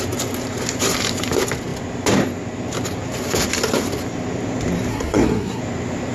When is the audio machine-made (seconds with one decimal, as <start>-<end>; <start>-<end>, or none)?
4.9-5.6